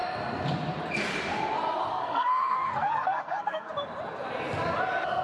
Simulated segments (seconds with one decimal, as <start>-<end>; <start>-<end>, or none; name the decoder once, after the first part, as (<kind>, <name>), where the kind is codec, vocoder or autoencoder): 1.9-3.7 (codec, SNAC)